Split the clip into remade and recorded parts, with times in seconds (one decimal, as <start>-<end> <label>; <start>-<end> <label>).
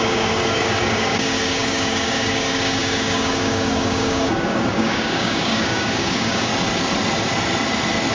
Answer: 0.0-6.5 remade; 6.5-8.1 recorded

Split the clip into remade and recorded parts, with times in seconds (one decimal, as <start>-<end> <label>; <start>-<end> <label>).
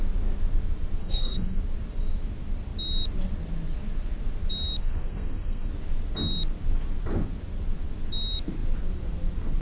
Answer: 0.0-1.0 recorded; 1.0-1.6 remade; 1.6-4.8 recorded; 4.8-5.7 remade; 5.7-9.6 recorded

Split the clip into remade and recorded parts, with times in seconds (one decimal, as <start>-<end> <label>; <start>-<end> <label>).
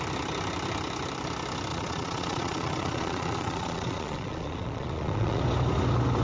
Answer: 0.0-1.7 recorded; 1.7-5.4 remade; 5.4-6.2 recorded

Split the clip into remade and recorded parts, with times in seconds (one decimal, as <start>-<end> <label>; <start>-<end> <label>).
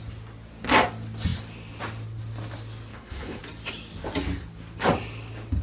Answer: 0.0-2.9 recorded; 2.9-3.4 remade; 3.4-5.6 recorded